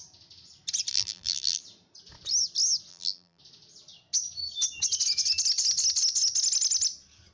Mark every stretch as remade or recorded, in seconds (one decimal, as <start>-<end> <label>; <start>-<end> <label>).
0.0-0.9 recorded; 0.9-1.6 remade; 1.6-2.9 recorded; 2.9-3.4 remade; 3.4-7.3 recorded